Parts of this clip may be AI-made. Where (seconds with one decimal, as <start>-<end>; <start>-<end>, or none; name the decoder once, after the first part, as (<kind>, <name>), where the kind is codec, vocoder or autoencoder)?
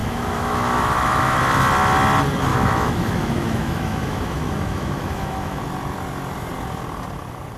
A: 0.0-1.4 (autoencoder, DAC-VAE); 2.5-5.6